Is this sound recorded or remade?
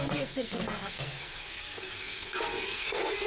remade